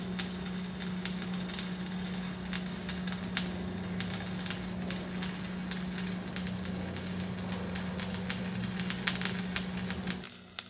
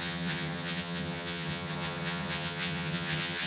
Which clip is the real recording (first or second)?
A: first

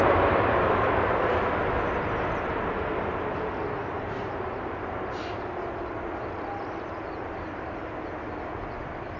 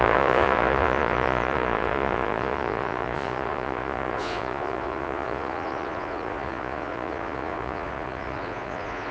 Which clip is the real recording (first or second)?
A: first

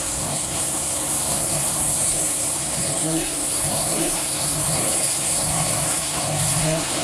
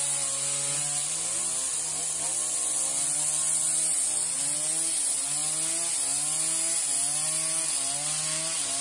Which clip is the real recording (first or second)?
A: second